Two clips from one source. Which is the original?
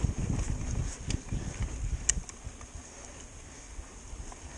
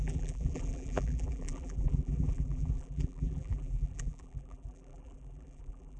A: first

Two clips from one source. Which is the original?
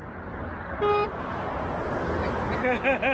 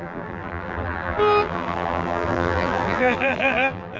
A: first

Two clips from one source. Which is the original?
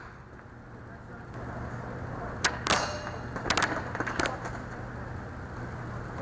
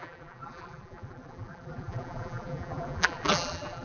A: first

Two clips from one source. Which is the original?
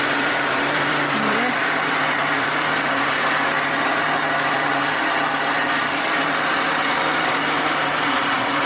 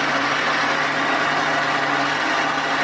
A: second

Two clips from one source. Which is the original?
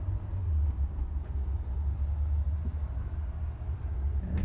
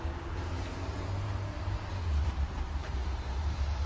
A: first